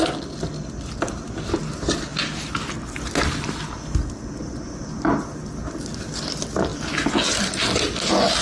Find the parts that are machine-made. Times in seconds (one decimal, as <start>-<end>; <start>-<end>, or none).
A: none